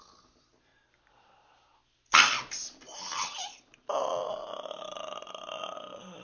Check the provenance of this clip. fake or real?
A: real